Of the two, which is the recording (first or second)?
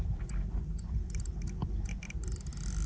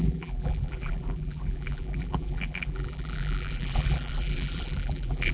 first